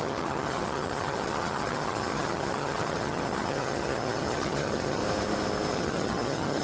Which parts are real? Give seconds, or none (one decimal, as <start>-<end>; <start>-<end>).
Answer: 5.0-5.7